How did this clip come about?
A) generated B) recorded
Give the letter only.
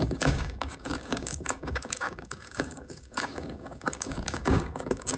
A